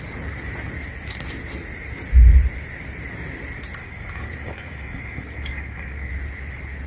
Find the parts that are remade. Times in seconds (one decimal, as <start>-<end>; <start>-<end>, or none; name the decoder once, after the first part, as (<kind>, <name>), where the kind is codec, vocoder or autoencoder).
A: 3.8-6.1 (codec, DAC)